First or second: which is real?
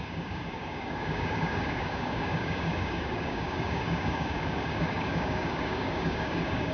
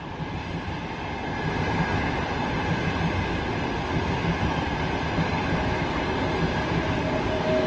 second